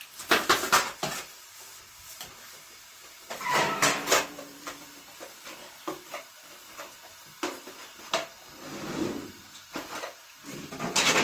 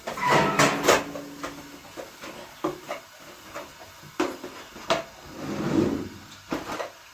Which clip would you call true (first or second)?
second